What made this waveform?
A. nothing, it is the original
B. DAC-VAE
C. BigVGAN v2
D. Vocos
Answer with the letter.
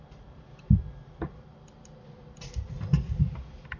C